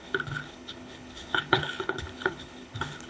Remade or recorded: remade